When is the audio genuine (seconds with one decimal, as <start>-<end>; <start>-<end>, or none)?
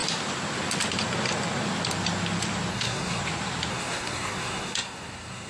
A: 0.0-2.7; 3.2-3.7